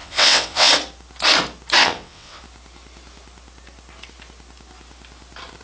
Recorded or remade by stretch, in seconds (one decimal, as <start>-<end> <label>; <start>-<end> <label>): 0.0-0.7 remade; 0.7-1.8 recorded; 1.8-2.4 remade; 2.4-5.6 recorded